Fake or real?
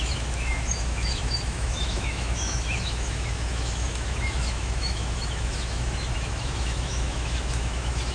fake